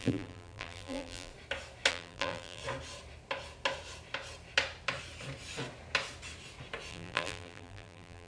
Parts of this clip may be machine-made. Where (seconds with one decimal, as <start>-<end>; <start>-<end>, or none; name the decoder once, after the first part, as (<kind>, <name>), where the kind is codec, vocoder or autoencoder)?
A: 0.0-1.3 (vocoder, BigVGAN v2); 1.9-2.6; 6.9-8.3